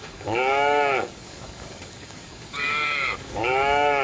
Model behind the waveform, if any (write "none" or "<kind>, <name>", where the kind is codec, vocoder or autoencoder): codec, DAC